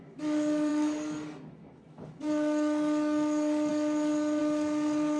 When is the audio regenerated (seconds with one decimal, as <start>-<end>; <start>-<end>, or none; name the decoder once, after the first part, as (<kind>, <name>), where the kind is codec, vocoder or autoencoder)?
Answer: 0.0-5.2 (codec, DAC)